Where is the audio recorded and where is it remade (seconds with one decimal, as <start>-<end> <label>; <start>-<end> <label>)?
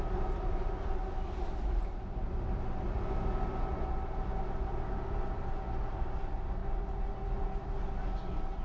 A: 0.0-8.6 recorded